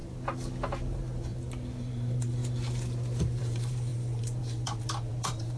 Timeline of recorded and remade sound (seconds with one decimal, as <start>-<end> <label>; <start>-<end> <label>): 0.0-0.9 recorded; 0.9-1.3 remade; 1.3-1.8 recorded; 1.8-2.4 remade; 2.4-3.4 recorded; 3.4-5.6 remade